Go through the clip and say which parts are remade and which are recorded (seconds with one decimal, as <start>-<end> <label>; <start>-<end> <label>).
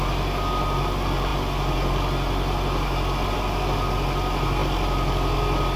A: 0.0-5.8 recorded